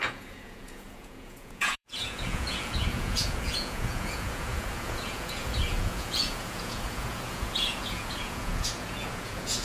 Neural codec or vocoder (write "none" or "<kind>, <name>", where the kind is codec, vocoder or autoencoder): vocoder, Vocos